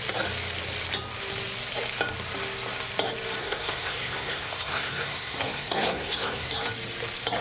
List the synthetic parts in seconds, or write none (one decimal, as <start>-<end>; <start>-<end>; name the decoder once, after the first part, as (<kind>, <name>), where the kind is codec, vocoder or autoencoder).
3.4-6.5 (codec, SNAC)